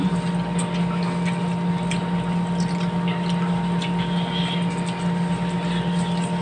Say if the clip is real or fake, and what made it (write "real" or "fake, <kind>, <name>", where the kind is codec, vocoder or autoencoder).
real